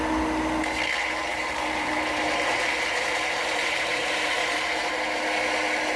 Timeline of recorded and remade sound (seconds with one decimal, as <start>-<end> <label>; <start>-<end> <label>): 0.0-1.3 recorded; 1.3-4.9 remade; 4.9-6.0 recorded